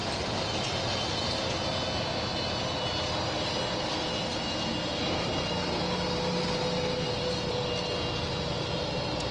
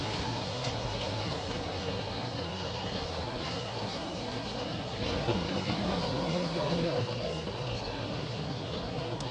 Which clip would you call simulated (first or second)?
second